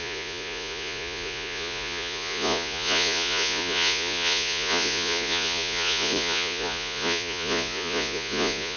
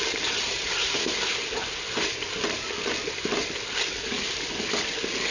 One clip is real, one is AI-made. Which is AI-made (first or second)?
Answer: first